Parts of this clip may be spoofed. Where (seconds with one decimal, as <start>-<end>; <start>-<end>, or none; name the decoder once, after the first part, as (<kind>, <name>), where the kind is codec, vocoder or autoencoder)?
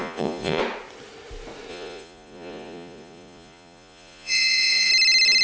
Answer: 0.0-0.6 (vocoder, Vocos); 1.7-4.9